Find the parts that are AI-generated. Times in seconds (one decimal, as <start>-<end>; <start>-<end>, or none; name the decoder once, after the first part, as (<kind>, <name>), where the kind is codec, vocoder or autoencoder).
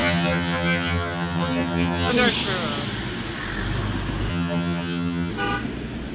0.0-2.1 (vocoder, HiFi-GAN); 4.3-5.3